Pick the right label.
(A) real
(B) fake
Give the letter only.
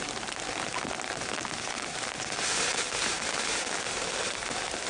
A